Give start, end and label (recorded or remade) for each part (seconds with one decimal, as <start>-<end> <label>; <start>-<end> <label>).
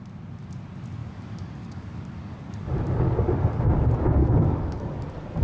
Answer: 0.0-1.0 recorded; 1.0-3.6 remade; 3.6-4.2 recorded; 4.2-5.0 remade; 5.0-5.4 recorded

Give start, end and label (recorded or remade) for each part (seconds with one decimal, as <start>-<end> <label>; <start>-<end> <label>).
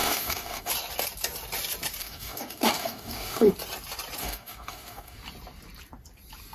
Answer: 0.0-0.7 remade; 0.7-2.0 recorded; 2.0-3.5 remade; 3.5-4.2 recorded; 4.2-5.2 remade; 5.2-6.5 recorded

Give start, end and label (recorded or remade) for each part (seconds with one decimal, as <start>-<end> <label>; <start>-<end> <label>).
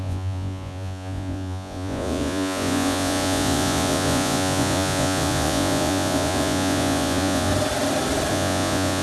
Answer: 0.0-7.5 remade; 7.5-8.3 recorded; 8.3-9.0 remade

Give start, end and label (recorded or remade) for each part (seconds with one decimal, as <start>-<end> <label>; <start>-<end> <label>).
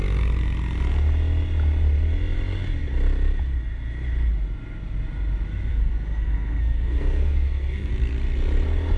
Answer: 0.0-5.7 recorded; 5.7-7.9 remade; 7.9-9.0 recorded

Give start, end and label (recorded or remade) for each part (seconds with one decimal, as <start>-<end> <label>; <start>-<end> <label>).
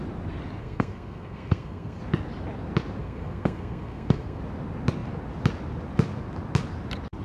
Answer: 0.0-0.6 recorded; 0.6-2.0 remade; 2.0-3.0 recorded; 3.0-4.4 remade; 4.4-7.2 recorded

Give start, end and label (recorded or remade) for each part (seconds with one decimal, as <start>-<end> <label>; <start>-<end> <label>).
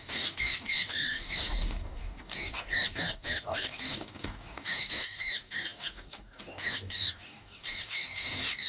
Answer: 0.0-8.7 remade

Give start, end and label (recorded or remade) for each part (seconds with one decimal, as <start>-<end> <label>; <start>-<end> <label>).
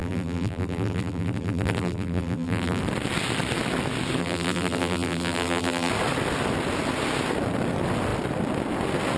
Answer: 0.0-2.8 remade; 2.8-4.2 recorded; 4.2-5.9 remade; 5.9-9.2 recorded